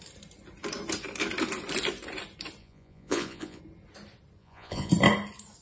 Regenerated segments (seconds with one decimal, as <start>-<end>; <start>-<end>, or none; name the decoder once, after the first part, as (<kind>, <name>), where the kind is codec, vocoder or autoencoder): 2.6-3.6 (vocoder, Vocos); 4.4-4.9